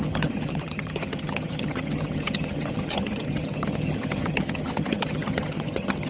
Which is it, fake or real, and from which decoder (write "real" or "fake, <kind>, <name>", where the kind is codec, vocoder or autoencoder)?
fake, vocoder, HiFi-GAN